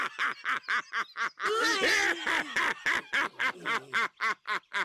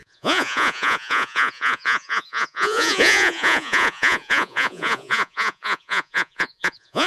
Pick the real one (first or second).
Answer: first